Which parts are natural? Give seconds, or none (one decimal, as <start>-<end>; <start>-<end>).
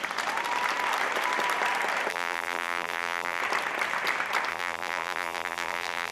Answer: 0.0-2.1; 3.4-4.5